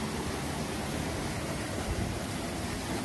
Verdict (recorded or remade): recorded